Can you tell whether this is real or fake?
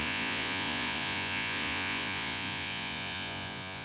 fake